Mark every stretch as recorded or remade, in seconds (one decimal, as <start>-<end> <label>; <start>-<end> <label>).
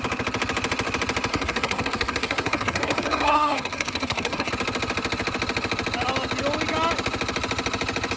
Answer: 0.0-1.3 recorded; 1.3-4.5 remade; 4.5-8.2 recorded